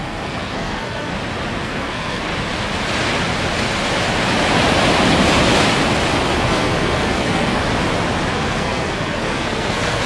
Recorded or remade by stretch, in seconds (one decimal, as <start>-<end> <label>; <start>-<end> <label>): 0.0-1.1 remade; 1.1-1.6 recorded; 1.6-2.3 remade; 2.3-6.4 recorded; 6.4-7.6 remade; 7.6-8.3 recorded; 8.3-10.1 remade